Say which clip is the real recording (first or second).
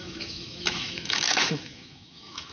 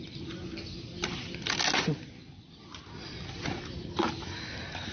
second